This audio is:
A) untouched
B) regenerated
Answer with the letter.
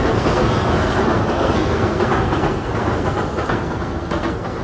B